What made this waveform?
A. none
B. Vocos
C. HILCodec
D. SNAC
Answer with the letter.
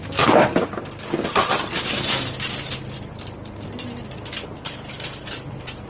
A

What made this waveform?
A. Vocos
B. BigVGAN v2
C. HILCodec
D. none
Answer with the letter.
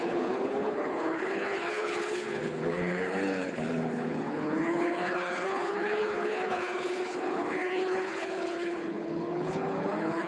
C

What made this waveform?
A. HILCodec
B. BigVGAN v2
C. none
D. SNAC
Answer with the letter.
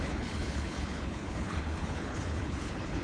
A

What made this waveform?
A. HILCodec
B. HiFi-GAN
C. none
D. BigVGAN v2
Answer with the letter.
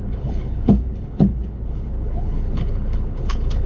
A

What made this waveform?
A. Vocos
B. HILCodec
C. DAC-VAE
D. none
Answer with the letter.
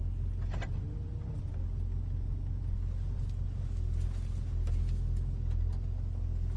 D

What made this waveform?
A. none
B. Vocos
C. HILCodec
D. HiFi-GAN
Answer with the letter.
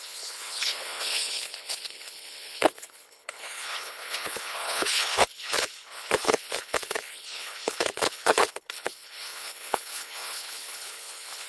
C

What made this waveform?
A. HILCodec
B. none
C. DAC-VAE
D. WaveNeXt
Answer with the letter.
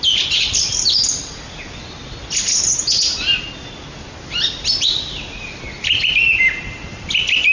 B